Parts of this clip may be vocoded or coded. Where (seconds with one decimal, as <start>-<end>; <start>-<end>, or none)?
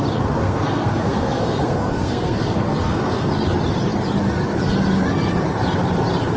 0.4-3.3